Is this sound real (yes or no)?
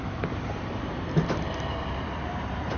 no